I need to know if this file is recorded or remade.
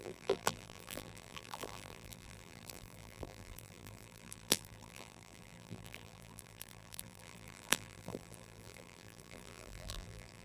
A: remade